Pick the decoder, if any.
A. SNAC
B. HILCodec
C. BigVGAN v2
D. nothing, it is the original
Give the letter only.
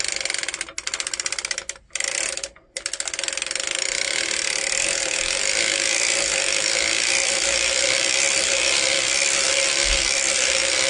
D